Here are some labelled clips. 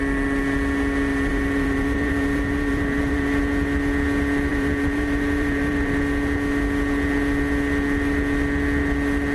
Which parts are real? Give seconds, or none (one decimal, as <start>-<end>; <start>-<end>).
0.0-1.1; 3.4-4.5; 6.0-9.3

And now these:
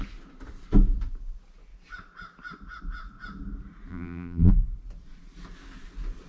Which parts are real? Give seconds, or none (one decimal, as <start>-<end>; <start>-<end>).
0.0-3.9; 4.5-6.3

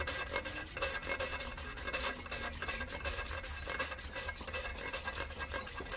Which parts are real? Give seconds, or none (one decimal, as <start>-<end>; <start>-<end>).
0.0-6.0

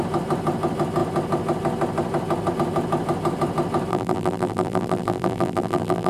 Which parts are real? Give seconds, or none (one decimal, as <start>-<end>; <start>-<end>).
0.0-3.9